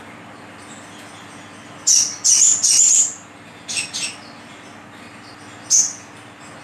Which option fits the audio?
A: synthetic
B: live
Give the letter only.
B